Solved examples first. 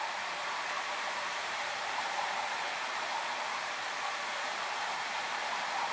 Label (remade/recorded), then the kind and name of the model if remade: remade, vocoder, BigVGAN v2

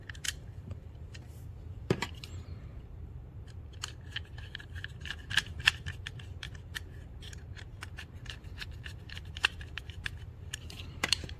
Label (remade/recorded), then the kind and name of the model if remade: remade, vocoder, BigVGAN v2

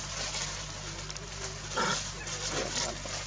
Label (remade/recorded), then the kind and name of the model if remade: recorded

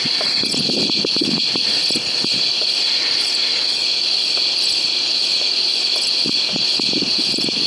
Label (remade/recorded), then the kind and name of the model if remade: recorded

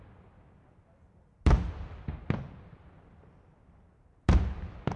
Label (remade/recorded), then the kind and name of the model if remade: recorded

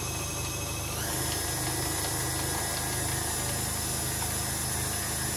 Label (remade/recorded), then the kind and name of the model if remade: recorded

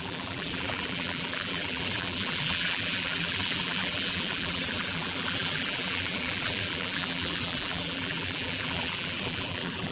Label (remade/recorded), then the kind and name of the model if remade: remade, vocoder, BigVGAN v2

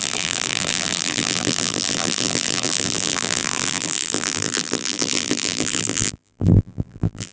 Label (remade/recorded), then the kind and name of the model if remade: remade, vocoder, BigVGAN v2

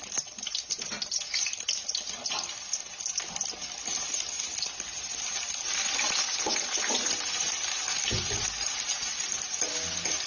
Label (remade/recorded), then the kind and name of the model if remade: recorded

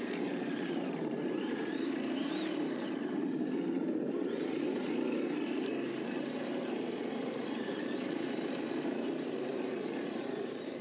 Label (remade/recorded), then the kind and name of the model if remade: remade, vocoder, BigVGAN v2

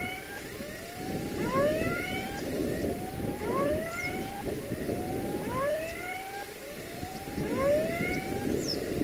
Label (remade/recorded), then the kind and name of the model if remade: remade, vocoder, BigVGAN v2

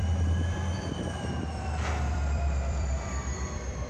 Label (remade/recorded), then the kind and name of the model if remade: remade, vocoder, BigVGAN v2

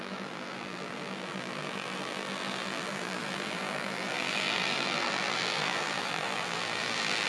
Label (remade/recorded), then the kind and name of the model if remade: remade, vocoder, BigVGAN v2